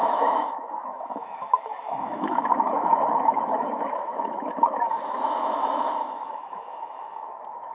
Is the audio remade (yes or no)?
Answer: yes